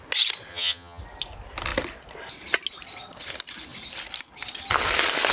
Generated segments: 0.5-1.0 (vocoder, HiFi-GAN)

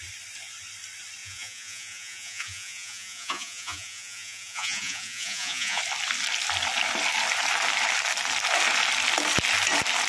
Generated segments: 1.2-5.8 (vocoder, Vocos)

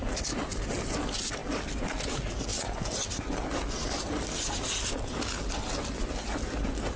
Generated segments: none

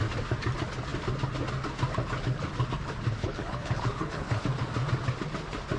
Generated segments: 3.2-4.4 (codec, HILCodec)

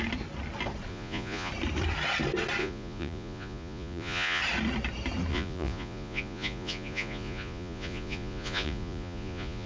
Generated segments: 0.9-1.5 (vocoder, Vocos); 2.6-4.4; 5.3-9.7

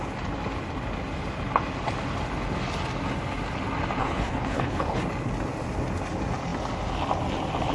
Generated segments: 4.0-5.0 (codec, HILCodec)

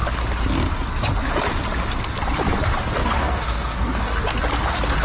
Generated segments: 3.0-4.2 (codec, SNAC)

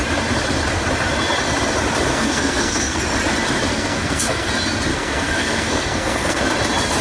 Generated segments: 2.1-3.0 (codec, SNAC); 3.7-4.5; 4.9-6.4